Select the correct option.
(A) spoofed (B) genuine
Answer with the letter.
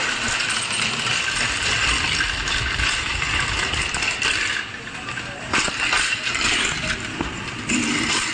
B